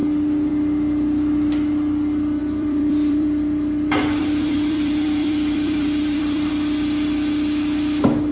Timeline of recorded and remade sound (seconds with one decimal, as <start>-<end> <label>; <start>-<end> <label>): 0.0-2.4 recorded; 2.4-6.5 remade; 6.5-8.3 recorded